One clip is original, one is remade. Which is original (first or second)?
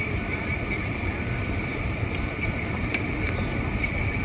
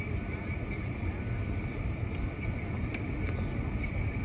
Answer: second